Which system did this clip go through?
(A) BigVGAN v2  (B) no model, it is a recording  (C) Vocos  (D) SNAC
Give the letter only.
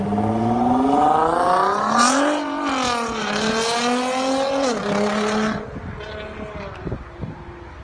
B